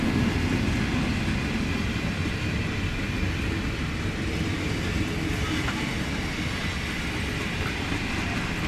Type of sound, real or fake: real